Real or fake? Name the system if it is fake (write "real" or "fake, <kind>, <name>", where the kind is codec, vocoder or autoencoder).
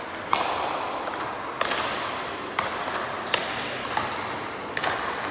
real